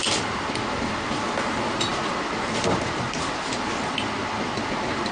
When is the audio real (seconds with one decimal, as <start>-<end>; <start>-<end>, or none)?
0.0-5.1